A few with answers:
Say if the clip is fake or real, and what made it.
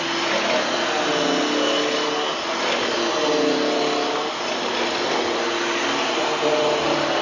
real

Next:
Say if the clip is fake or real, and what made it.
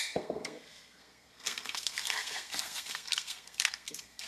fake, codec, SNAC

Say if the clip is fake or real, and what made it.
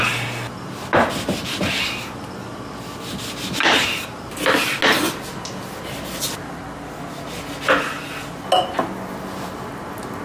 real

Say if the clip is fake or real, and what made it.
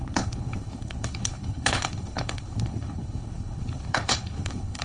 fake, codec, HILCodec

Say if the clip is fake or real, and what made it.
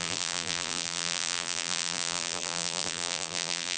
fake, vocoder, BigVGAN v2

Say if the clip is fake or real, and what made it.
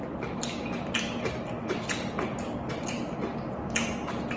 real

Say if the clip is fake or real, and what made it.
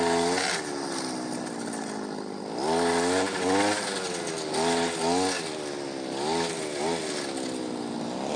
real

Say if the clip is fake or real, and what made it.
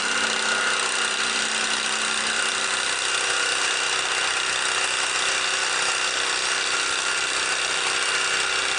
real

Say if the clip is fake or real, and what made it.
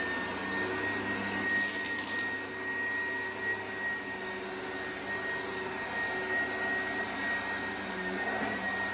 real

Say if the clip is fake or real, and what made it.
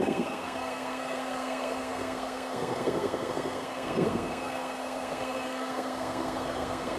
fake, codec, SNAC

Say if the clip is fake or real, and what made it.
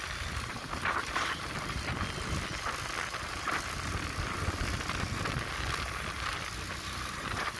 real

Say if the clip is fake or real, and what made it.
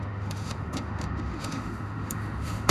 fake, autoencoder, DAC-VAE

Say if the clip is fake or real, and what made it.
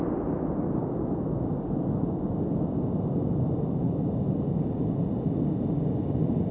real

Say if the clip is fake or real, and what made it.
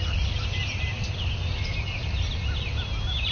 real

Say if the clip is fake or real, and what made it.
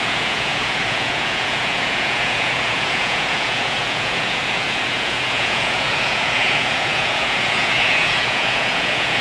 fake, vocoder, Vocos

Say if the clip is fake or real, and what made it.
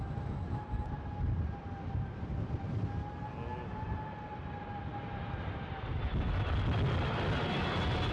real